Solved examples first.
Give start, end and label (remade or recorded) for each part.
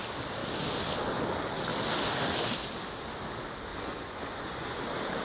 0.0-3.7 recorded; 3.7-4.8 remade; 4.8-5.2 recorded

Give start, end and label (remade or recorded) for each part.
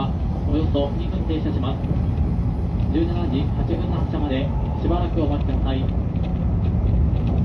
0.0-7.4 recorded